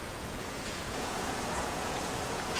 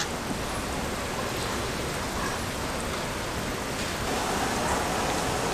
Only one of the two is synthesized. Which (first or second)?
first